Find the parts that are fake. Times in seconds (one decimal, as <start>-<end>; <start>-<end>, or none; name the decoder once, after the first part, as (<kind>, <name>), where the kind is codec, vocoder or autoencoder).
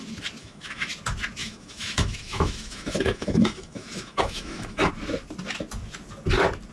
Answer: 0.4-0.9 (autoencoder, DAC-VAE); 1.4-4.9